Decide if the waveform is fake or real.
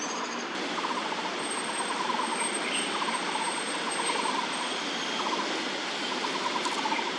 real